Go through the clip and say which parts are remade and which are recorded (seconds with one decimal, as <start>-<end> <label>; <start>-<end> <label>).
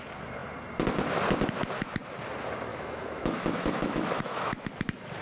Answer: 0.0-2.7 recorded; 2.7-4.7 remade; 4.7-5.2 recorded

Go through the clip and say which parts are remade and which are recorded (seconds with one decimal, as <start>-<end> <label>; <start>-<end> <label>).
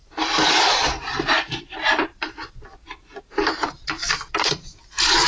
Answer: 0.0-5.3 remade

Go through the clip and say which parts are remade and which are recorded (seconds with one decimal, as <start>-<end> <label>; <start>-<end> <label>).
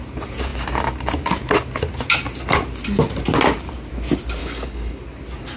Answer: 0.0-4.4 recorded; 4.4-5.0 remade; 5.0-5.6 recorded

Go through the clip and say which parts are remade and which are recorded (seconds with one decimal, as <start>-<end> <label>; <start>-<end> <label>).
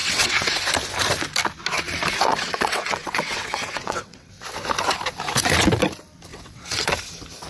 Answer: 0.0-0.6 remade; 0.6-2.3 recorded; 2.3-4.3 remade; 4.3-6.3 recorded; 6.3-6.9 remade; 6.9-7.5 recorded